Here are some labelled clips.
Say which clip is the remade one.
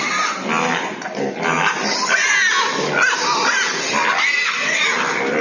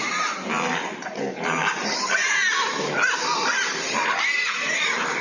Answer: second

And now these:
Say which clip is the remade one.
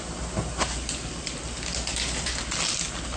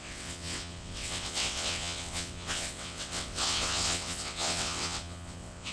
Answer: second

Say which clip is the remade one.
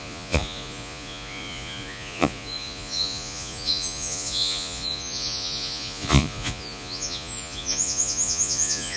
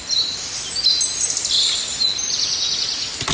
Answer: first